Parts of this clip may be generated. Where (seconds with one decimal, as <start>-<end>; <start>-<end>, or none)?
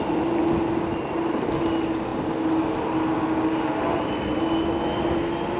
none